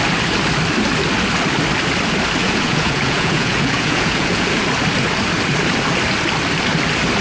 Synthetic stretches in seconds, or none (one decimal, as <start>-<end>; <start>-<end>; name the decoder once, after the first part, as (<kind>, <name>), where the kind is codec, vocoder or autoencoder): 2.4-4.6 (vocoder, Vocos)